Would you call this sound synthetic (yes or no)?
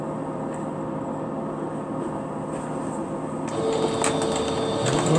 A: no